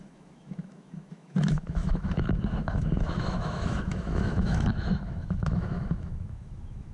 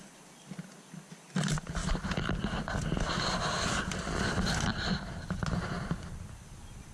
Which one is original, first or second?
second